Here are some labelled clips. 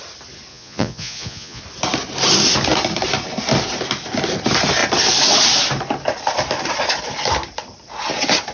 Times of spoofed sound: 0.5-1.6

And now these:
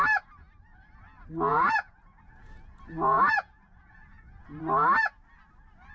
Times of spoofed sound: 1.5-4.6